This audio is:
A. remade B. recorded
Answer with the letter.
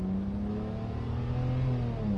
B